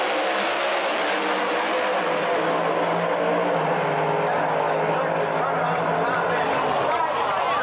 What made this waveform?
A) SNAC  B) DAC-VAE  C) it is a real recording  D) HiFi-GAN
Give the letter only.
C